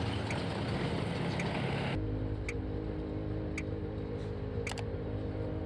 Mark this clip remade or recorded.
recorded